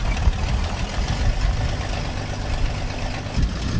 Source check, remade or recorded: recorded